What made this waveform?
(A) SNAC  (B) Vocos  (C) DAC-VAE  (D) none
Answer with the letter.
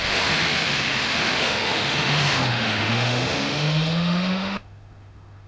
C